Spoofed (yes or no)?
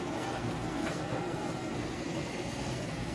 yes